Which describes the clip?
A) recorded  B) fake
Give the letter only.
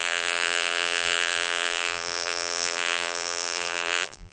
B